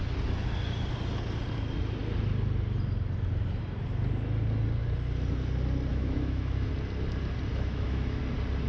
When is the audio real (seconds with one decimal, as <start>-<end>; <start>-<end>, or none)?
0.0-5.9; 6.7-7.5; 8.2-8.7